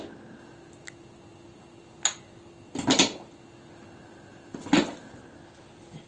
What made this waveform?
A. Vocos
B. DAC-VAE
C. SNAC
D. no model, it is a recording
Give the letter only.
D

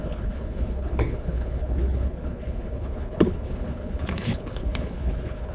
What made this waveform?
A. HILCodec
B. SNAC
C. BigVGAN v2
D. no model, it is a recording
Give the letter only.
A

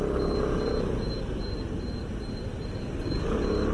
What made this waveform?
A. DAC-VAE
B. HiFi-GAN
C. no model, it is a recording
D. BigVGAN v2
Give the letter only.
C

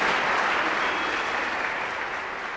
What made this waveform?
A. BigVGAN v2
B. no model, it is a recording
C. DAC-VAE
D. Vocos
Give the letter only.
B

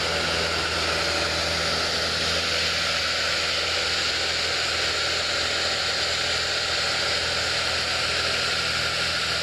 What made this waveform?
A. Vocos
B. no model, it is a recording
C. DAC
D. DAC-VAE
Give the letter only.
B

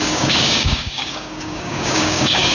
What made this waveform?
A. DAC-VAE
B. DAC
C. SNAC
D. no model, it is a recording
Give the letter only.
B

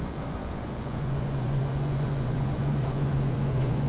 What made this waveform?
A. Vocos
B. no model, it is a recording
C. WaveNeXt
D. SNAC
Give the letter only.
A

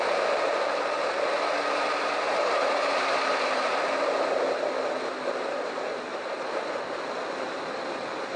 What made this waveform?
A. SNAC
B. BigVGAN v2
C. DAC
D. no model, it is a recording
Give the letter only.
D